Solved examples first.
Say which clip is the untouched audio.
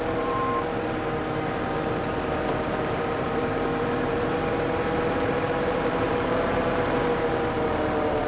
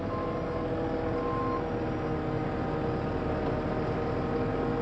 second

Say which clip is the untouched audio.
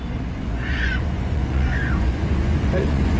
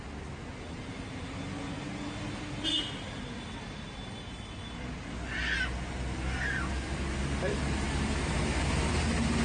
second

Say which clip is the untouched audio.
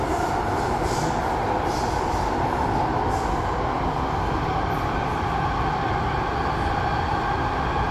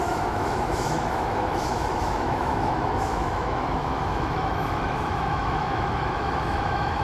first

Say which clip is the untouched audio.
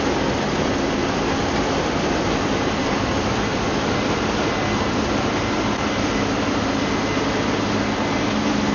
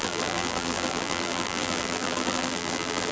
first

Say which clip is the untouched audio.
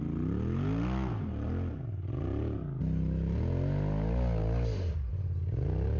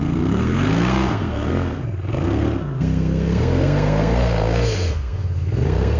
first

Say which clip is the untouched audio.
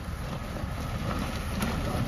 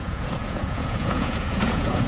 first